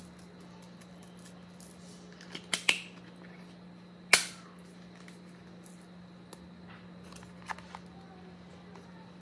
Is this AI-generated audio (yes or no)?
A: no